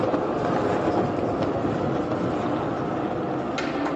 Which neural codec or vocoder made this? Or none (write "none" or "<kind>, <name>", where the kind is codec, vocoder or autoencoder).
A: none